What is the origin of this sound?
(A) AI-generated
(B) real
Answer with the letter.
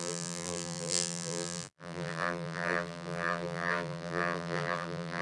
A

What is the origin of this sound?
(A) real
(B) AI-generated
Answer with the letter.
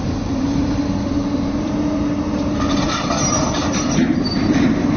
B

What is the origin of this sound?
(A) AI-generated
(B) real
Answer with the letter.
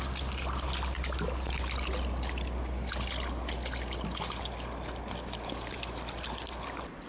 B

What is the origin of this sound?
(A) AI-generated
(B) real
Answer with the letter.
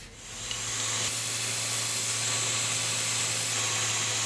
B